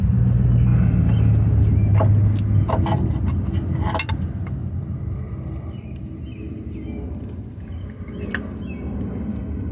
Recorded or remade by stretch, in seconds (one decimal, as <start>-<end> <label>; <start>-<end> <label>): 0.0-9.7 recorded